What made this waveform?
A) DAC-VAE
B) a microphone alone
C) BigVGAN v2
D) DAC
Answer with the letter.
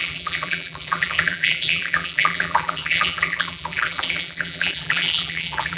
C